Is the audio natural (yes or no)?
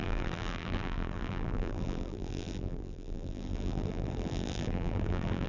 no